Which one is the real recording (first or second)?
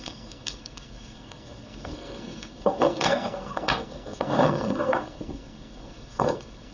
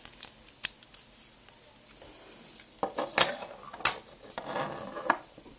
second